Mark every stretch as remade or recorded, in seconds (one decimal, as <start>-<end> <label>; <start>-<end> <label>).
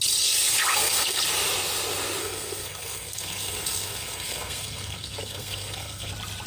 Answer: 0.0-0.7 recorded; 0.7-1.2 remade; 1.2-2.2 recorded; 2.2-6.1 remade; 6.1-6.5 recorded